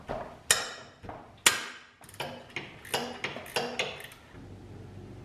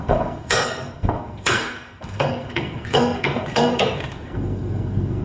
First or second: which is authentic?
first